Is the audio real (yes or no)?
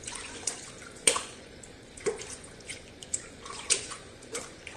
no